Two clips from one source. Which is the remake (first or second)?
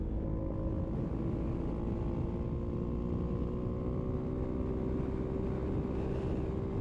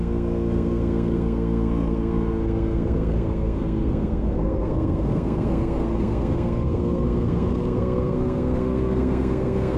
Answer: second